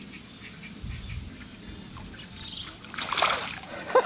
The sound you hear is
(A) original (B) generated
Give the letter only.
A